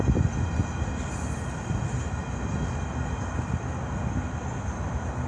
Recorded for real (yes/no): yes